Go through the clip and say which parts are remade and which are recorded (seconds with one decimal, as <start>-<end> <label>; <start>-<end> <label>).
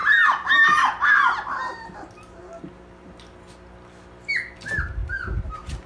0.0-5.9 recorded